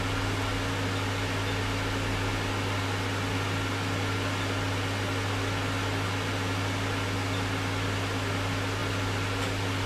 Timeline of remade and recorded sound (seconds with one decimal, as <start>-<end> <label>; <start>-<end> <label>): 0.0-9.9 recorded